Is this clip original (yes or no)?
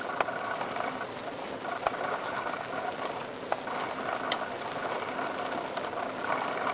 yes